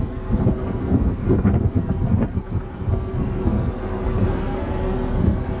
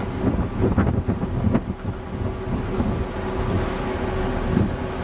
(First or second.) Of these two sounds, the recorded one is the second